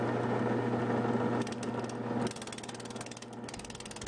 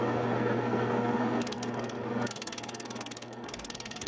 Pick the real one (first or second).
first